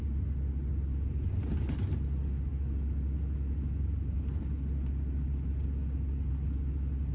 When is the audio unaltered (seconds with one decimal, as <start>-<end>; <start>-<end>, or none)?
0.0-7.1